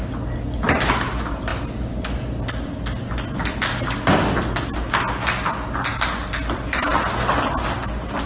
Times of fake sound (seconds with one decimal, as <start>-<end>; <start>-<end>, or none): none